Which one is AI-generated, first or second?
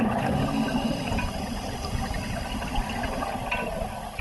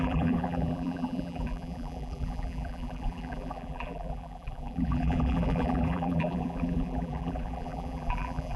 second